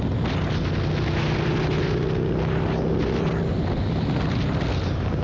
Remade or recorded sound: recorded